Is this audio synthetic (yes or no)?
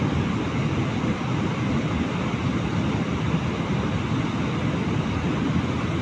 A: no